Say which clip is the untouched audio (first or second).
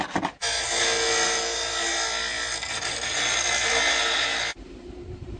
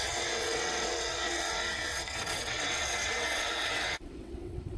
first